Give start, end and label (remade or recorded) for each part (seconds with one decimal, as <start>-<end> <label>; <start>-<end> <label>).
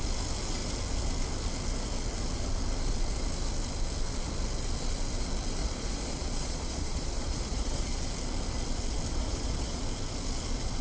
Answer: 0.0-5.6 recorded; 5.6-8.0 remade; 8.0-9.1 recorded; 9.1-9.8 remade; 9.8-10.8 recorded